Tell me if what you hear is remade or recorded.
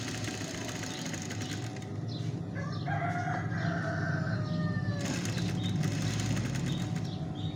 recorded